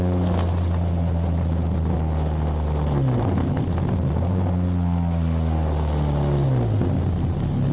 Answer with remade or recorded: recorded